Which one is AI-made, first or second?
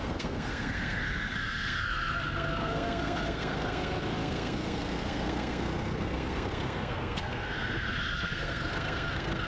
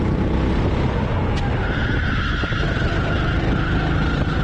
first